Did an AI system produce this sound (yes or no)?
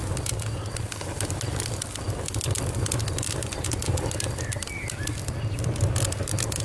no